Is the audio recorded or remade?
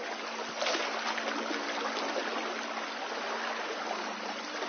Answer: recorded